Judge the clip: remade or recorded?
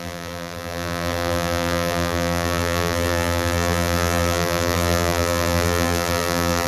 remade